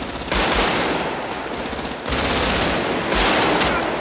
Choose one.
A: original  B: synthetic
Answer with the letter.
A